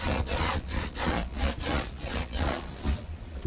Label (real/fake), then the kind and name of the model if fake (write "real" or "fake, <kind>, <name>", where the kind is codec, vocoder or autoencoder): fake, vocoder, Vocos